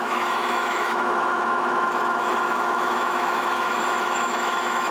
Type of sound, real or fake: fake